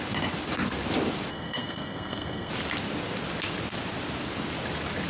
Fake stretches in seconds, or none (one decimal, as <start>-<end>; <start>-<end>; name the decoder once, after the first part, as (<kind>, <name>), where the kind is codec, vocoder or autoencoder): 1.3-2.5 (codec, SNAC)